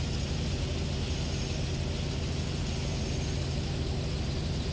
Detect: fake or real real